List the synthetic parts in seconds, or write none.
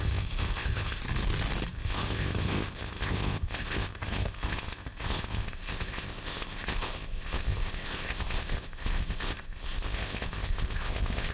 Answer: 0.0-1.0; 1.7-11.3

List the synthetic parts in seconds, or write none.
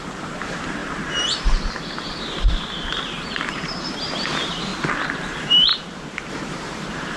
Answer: 0.0-4.7; 5.3-5.7; 6.3-7.2